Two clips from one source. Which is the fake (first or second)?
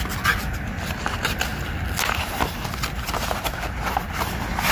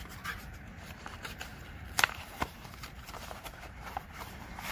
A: second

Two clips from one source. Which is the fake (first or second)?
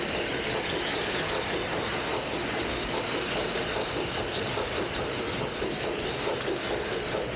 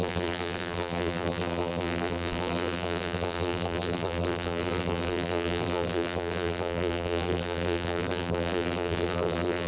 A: second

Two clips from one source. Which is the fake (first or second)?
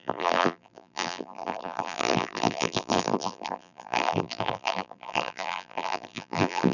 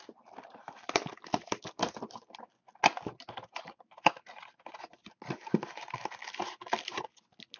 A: first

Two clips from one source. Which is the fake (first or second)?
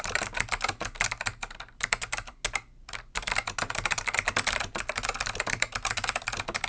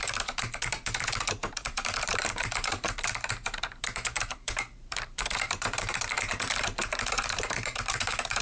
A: second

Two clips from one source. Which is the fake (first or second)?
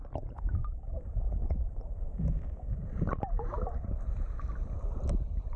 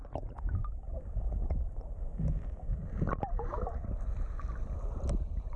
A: first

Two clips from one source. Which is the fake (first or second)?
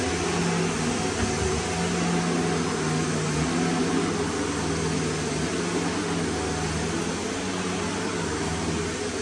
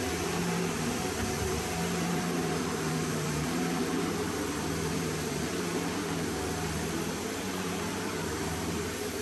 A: second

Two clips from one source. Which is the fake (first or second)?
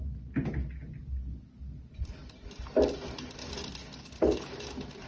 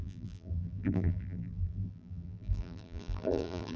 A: second